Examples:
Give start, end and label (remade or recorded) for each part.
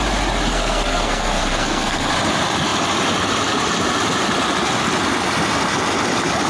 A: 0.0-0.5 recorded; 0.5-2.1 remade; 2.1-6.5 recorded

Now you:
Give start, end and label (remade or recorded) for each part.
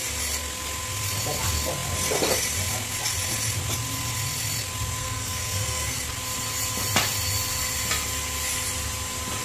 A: 0.0-5.0 recorded; 5.0-6.0 remade; 6.0-9.4 recorded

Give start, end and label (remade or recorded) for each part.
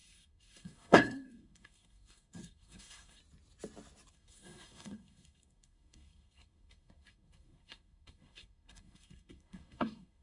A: 0.0-3.2 remade; 3.2-4.1 recorded; 4.1-10.2 remade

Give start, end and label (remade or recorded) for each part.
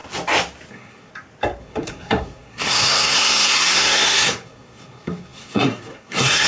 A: 0.0-0.7 recorded; 0.7-1.1 remade; 1.1-1.6 recorded; 1.6-6.5 remade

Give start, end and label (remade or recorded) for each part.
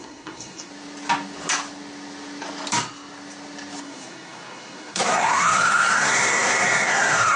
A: 0.0-0.7 remade; 0.7-3.8 recorded; 3.8-7.4 remade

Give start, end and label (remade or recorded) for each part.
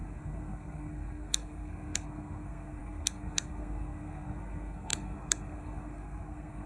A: 0.0-6.7 remade